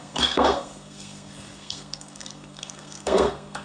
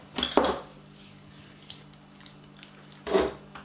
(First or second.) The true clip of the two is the second